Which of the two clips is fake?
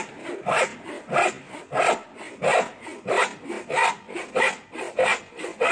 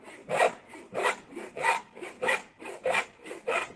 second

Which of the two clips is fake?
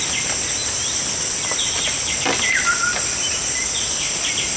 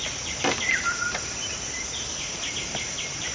second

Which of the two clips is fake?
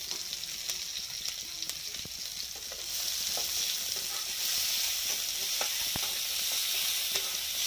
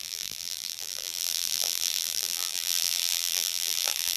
second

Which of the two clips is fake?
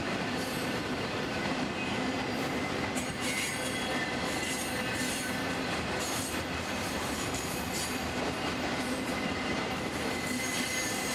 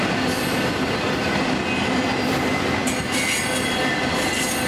first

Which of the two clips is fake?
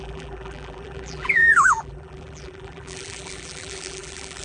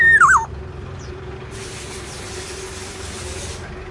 first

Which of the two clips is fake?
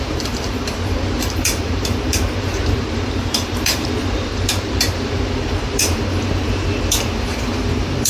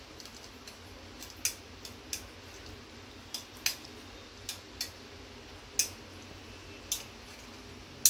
first